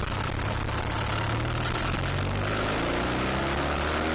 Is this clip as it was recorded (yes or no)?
yes